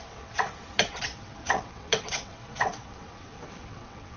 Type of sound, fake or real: fake